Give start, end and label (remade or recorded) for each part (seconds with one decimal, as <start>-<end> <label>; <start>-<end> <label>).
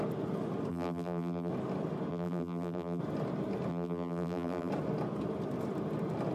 0.0-0.7 recorded; 0.7-1.5 remade; 1.5-2.1 recorded; 2.1-3.0 remade; 3.0-3.7 recorded; 3.7-4.7 remade; 4.7-6.3 recorded